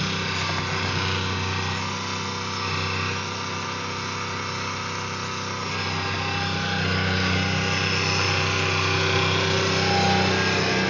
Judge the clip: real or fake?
real